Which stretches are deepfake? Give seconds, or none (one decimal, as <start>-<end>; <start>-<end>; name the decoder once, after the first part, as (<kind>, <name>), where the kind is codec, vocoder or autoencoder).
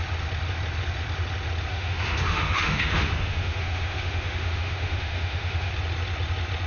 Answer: 1.7-5.7 (autoencoder, DAC-VAE)